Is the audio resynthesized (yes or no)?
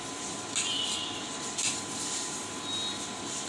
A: no